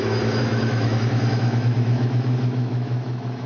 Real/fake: fake